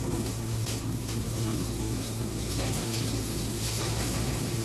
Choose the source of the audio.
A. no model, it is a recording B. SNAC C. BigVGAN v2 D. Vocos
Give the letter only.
B